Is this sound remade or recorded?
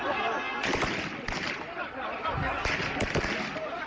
recorded